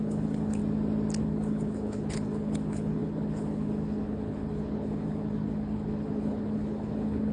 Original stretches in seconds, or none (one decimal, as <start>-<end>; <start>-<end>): 0.6-1.2